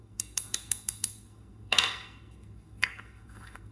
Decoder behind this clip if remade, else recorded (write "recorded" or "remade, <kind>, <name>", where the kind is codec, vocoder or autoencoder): remade, codec, SNAC